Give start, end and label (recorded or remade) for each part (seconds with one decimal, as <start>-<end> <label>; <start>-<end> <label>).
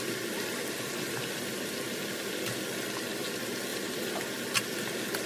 0.0-5.3 recorded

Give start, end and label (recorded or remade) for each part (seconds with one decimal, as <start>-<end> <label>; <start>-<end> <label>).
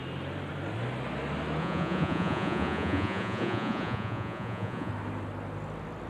0.0-1.6 recorded; 1.6-4.9 remade; 4.9-6.1 recorded